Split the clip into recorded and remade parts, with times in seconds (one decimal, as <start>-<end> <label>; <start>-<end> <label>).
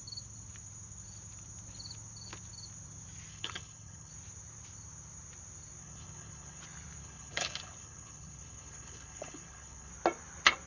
0.0-3.3 recorded; 3.3-4.1 remade; 4.1-5.8 recorded; 5.8-6.6 remade; 6.6-7.0 recorded; 7.0-9.9 remade; 9.9-10.7 recorded